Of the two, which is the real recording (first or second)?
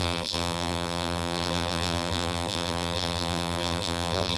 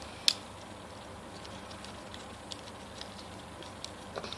second